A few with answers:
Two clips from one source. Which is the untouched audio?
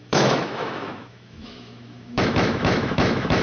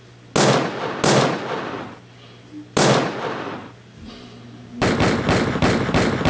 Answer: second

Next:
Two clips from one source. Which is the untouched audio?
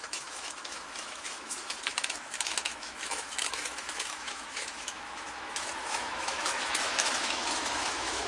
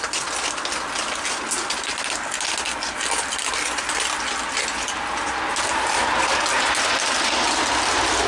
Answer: second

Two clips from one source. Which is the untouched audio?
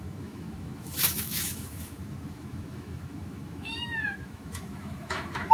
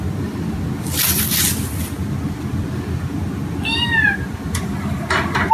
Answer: second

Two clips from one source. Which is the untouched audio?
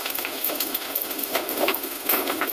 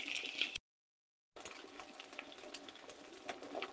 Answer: second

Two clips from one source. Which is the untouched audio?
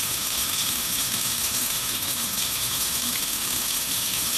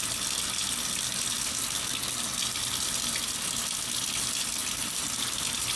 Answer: second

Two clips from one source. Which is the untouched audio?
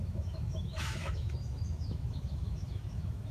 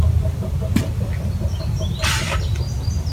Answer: second